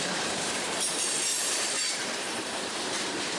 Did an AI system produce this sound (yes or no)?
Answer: yes